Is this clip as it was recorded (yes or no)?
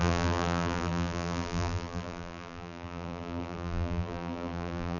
no